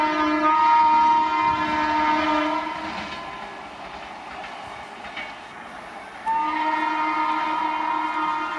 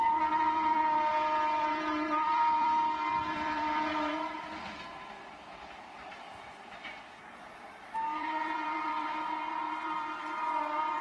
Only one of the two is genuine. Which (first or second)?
first